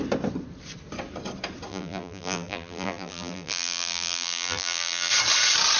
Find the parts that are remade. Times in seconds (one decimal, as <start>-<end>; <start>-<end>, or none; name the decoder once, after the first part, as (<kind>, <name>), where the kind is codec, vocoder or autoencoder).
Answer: 1.7-5.1 (vocoder, BigVGAN v2)